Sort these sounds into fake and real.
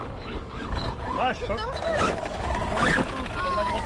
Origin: fake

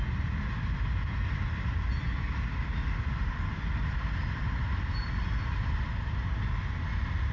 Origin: real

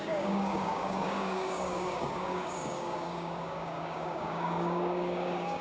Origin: fake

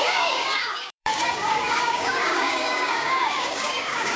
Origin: fake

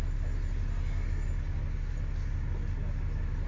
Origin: real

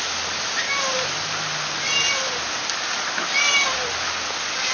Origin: real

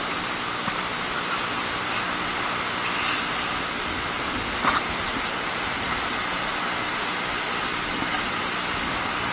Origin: real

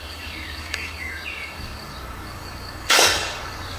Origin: fake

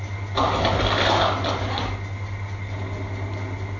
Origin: real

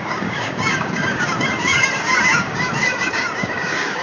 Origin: fake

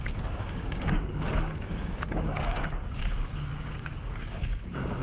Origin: fake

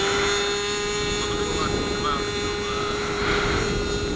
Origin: real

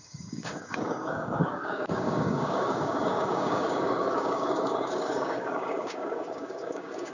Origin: fake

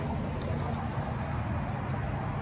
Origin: real